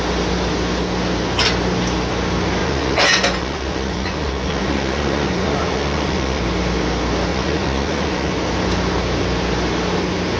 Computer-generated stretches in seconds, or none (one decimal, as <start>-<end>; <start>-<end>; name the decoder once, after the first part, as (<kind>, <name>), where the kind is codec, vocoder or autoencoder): 2.6-6.4 (vocoder, Vocos); 7.3-8.3